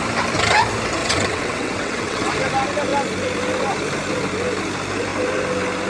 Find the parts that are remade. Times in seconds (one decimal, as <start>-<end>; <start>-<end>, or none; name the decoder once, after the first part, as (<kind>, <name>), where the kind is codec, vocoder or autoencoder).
1.0-2.3 (vocoder, WaveNeXt)